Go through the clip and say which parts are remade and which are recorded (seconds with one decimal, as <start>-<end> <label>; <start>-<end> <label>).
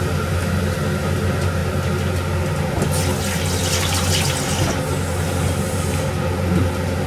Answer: 0.0-7.1 recorded